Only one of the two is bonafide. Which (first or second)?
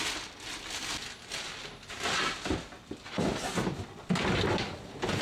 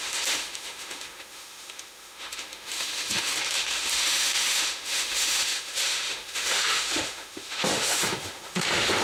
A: first